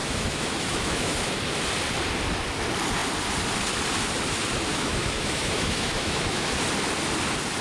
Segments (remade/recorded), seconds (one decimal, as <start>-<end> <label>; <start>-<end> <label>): 0.0-1.3 remade; 1.3-4.7 recorded; 4.7-6.5 remade; 6.5-7.6 recorded